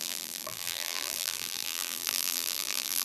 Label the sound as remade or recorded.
remade